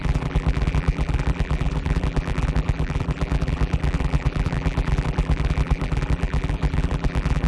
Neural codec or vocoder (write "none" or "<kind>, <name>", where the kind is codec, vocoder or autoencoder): vocoder, BigVGAN v2